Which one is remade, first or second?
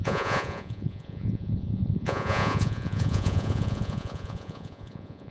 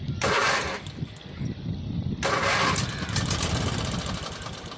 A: first